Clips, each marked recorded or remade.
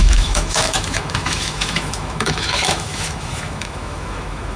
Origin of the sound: remade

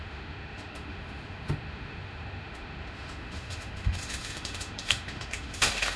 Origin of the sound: remade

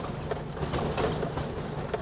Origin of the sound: recorded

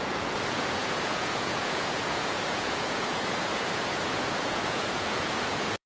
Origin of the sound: remade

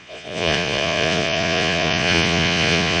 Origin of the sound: remade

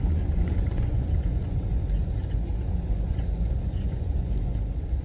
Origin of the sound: remade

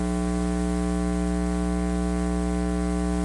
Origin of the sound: recorded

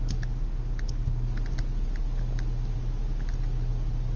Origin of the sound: recorded